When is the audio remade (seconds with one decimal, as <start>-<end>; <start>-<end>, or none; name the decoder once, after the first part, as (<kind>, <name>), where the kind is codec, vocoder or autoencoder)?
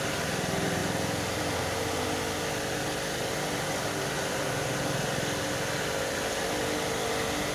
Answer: none